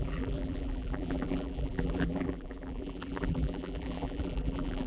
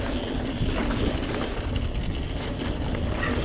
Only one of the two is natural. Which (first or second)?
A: second